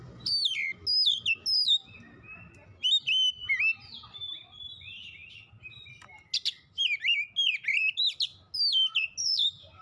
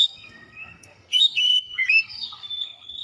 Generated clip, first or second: second